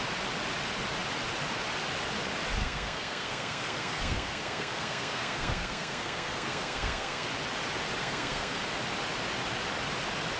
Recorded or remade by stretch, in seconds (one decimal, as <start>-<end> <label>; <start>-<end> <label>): 0.0-2.6 recorded; 2.6-7.3 remade; 7.3-8.0 recorded; 8.0-8.6 remade; 8.6-10.4 recorded

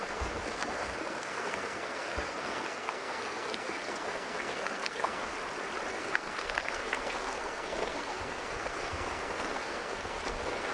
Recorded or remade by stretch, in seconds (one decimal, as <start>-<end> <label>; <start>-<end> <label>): 0.0-5.3 remade; 5.3-5.9 recorded; 5.9-10.7 remade

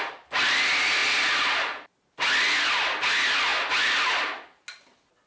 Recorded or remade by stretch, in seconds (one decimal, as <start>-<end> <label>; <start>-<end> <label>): 0.0-5.3 recorded

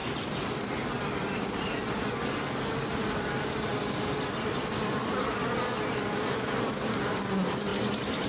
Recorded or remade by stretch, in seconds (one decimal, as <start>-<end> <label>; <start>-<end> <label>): 0.0-8.3 recorded

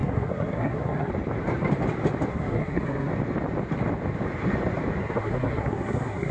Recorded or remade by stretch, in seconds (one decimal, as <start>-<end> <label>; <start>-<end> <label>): 0.0-1.1 remade; 1.1-2.3 recorded; 2.3-3.1 remade; 3.1-5.0 recorded; 5.0-6.3 remade

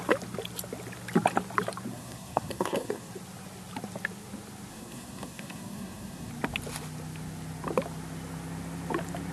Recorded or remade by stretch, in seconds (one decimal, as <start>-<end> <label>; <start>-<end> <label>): 0.0-1.9 recorded; 1.9-3.1 remade; 3.1-4.7 recorded; 4.7-6.3 remade; 6.3-9.3 recorded

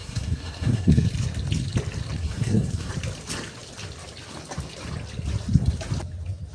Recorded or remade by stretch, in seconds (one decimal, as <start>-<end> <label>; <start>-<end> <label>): 0.0-1.1 remade; 1.1-2.2 recorded; 2.2-2.9 remade; 2.9-6.5 recorded